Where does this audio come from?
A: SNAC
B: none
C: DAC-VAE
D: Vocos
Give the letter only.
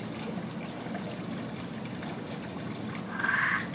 B